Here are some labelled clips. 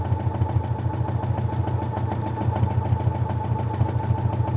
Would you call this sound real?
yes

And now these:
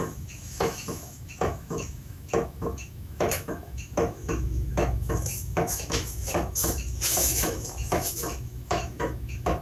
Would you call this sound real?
no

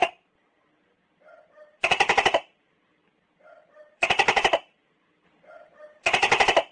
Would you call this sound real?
no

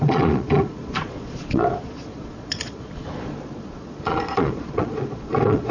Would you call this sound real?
no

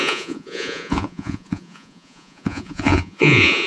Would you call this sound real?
no